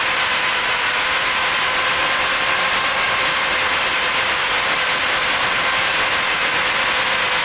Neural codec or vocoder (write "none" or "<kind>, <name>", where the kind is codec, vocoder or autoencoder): none